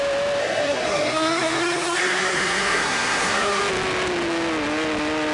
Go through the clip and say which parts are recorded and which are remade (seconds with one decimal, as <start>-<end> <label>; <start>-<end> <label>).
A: 0.0-0.4 recorded; 0.4-3.6 remade; 3.6-5.3 recorded